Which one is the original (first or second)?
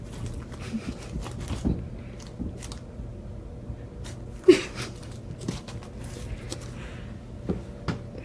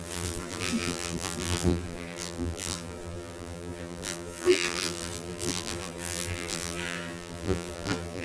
first